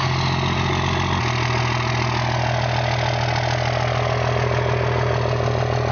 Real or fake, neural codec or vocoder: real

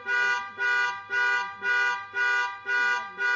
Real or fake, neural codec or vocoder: real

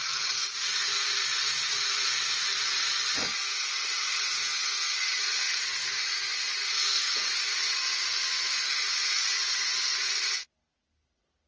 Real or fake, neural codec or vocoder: real